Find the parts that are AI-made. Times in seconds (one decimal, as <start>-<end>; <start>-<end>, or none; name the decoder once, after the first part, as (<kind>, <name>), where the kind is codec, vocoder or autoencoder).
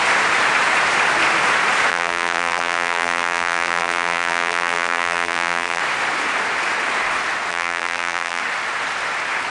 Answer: 1.9-5.8 (vocoder, BigVGAN v2); 7.5-8.4